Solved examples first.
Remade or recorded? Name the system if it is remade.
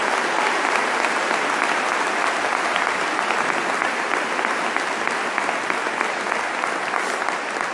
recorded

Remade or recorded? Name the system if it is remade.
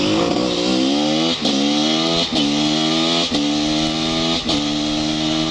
recorded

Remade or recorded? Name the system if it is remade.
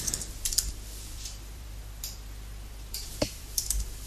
remade, vocoder, BigVGAN v2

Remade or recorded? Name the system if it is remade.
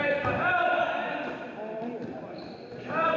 remade, vocoder, BigVGAN v2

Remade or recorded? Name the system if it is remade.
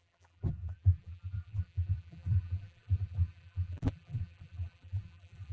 remade, vocoder, BigVGAN v2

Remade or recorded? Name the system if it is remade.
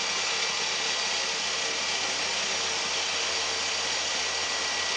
recorded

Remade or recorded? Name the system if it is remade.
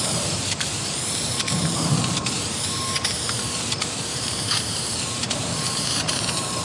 remade, vocoder, BigVGAN v2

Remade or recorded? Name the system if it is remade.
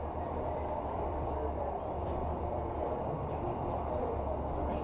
remade, vocoder, BigVGAN v2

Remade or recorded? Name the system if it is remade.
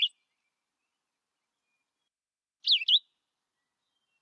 recorded